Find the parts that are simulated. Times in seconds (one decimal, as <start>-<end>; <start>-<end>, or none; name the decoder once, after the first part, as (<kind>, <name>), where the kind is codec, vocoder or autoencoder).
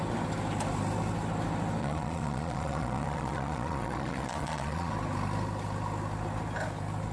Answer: 1.8-4.9 (vocoder, Vocos)